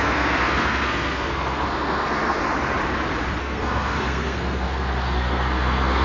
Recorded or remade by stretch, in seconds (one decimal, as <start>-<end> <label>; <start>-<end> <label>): 0.0-2.4 remade; 2.4-3.4 recorded; 3.4-6.0 remade